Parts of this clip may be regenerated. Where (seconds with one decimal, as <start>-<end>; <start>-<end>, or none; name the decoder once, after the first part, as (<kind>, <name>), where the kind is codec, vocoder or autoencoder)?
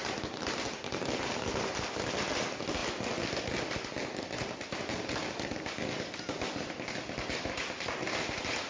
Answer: 0.0-2.8 (vocoder, BigVGAN v2); 3.4-8.7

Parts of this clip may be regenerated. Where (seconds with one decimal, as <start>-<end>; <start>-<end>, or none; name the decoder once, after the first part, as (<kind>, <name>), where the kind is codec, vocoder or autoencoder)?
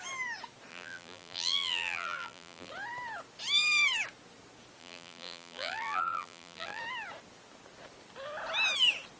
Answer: 0.7-2.7 (vocoder, BigVGAN v2); 4.8-6.8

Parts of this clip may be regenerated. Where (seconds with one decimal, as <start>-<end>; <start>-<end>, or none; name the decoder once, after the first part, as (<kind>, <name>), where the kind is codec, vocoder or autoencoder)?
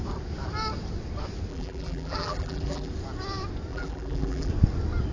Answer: 1.5-2.9 (vocoder, BigVGAN v2); 3.7-4.5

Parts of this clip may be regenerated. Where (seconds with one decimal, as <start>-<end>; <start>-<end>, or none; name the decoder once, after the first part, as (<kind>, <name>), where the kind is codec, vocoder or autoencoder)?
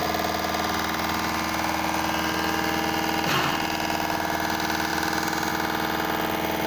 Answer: none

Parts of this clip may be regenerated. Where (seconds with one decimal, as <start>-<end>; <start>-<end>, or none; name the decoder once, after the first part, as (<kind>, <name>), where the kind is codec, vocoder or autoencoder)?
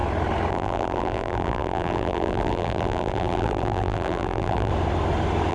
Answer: 0.5-4.7 (vocoder, BigVGAN v2)